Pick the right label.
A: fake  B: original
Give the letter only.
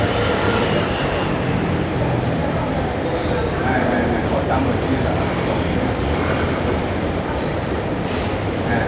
A